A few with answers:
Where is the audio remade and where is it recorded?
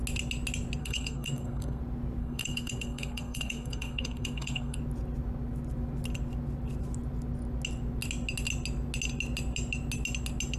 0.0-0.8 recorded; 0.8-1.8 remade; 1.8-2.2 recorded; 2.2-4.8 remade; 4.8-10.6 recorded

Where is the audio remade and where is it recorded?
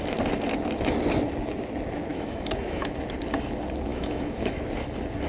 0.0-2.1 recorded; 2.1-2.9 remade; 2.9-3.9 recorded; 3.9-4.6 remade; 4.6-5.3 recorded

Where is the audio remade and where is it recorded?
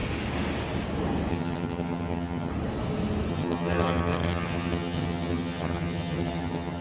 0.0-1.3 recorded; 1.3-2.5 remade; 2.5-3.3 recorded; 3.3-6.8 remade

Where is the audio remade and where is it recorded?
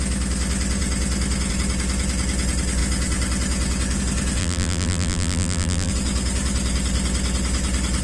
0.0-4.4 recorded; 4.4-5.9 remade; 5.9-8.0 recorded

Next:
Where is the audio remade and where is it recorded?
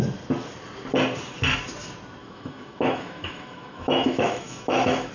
0.0-2.2 recorded; 2.2-5.1 remade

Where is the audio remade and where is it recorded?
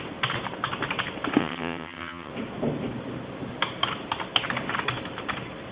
0.0-1.4 recorded; 1.4-2.3 remade; 2.3-5.7 recorded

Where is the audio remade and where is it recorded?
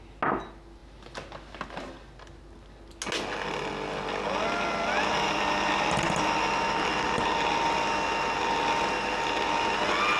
0.0-10.2 recorded